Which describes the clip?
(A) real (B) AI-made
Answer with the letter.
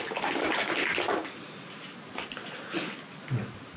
A